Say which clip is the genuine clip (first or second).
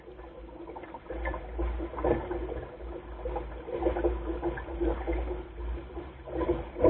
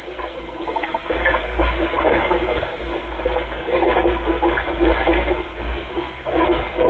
first